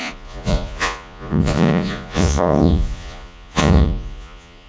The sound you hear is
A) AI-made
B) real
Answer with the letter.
A